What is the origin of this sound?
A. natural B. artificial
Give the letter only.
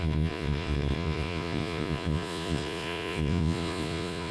B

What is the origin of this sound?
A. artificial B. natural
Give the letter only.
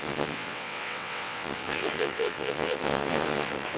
A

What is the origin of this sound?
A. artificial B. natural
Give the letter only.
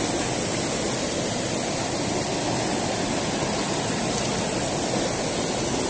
B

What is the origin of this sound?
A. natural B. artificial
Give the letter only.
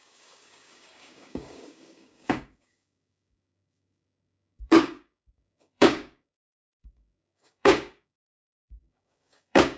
B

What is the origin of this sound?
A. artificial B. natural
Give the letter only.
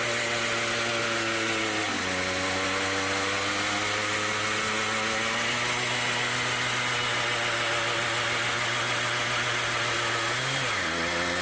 B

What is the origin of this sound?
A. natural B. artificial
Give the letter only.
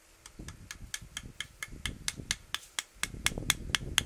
A